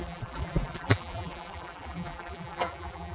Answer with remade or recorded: remade